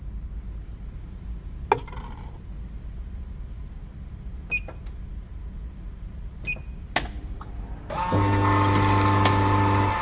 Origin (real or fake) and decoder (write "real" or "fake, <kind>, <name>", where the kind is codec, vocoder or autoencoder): real